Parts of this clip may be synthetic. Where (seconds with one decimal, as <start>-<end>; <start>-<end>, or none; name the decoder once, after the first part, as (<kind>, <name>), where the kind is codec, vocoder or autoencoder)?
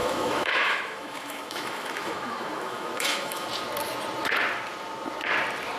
0.0-3.5 (autoencoder, DAC-VAE)